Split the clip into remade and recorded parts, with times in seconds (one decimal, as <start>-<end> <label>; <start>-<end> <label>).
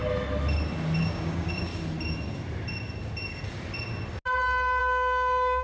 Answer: 0.0-1.0 recorded; 1.0-1.7 remade; 1.7-4.8 recorded; 4.8-5.6 remade